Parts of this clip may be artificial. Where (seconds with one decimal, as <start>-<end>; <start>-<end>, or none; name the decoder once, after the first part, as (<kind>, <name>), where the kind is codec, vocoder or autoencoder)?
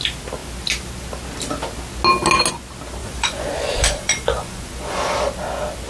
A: 3.0-5.0 (vocoder, Vocos)